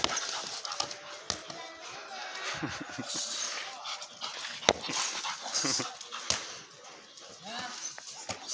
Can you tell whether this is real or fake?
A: real